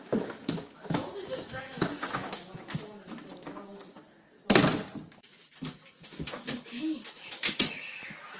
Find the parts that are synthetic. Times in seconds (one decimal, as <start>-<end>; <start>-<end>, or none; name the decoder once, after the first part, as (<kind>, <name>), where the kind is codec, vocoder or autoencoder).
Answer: 0.0-4.0 (autoencoder, DAC-VAE); 5.1-8.4